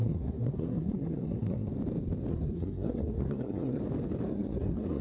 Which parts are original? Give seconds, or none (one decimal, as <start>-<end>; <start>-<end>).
1.7-2.3; 3.8-4.3